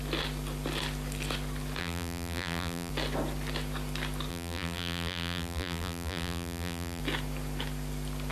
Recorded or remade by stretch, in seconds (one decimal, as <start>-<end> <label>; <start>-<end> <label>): 0.0-1.8 recorded; 1.8-2.9 remade; 2.9-4.3 recorded; 4.3-7.0 remade; 7.0-8.3 recorded